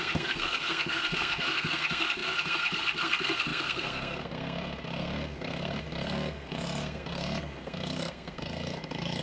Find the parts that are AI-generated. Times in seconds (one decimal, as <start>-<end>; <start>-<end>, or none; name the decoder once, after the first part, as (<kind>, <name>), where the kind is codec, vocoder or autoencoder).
0.0-9.2 (codec, SNAC)